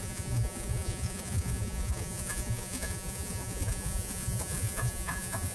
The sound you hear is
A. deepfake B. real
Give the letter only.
A